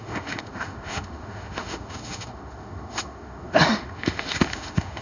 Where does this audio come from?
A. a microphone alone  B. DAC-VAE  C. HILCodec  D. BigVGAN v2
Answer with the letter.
B